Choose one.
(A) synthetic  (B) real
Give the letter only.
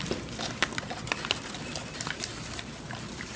B